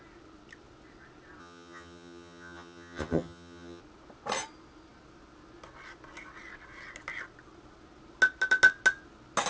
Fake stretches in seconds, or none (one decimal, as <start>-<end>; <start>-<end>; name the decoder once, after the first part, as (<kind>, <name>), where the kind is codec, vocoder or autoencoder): 1.4-3.8 (vocoder, HiFi-GAN)